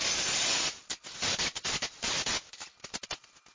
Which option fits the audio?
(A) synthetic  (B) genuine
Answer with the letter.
B